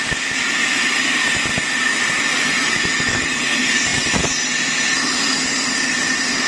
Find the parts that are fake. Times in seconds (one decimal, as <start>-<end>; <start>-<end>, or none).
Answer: none